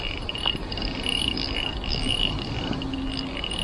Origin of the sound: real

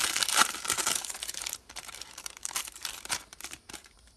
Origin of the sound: fake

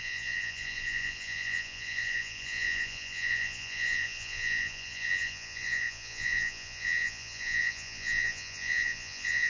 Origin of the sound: fake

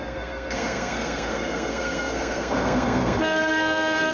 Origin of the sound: fake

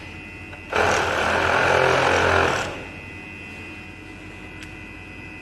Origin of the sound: real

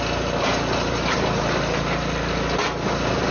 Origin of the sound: real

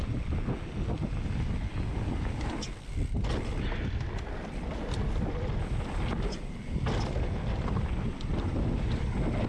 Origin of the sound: real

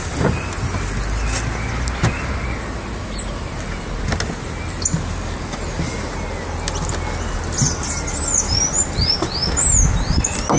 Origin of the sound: real